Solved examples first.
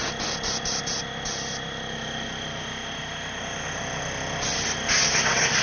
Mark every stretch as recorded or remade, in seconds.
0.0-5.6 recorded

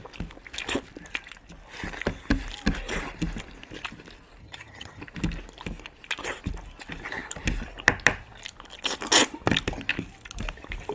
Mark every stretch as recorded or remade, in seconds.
0.0-4.4 recorded; 4.4-5.0 remade; 5.0-10.9 recorded

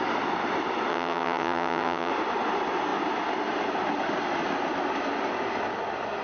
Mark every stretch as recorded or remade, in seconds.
0.0-0.9 recorded; 0.9-2.1 remade; 2.1-6.2 recorded

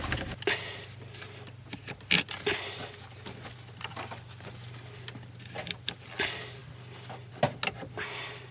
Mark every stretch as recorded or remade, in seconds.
0.0-8.5 recorded

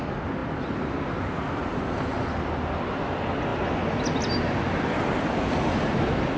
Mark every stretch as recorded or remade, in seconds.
0.0-6.4 recorded

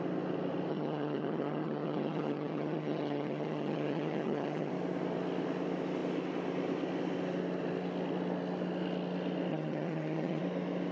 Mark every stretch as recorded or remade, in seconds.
0.0-0.7 recorded; 0.7-4.7 remade; 4.7-9.5 recorded; 9.5-10.4 remade; 10.4-10.9 recorded

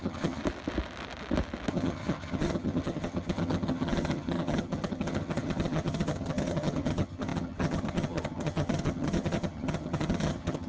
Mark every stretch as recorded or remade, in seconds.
0.0-0.4 remade; 0.4-1.7 recorded; 1.7-10.7 remade